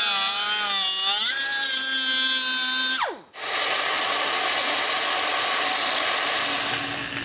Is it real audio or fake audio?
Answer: real